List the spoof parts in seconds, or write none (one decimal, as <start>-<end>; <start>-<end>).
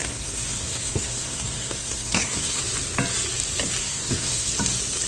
0.0-2.6; 3.8-4.5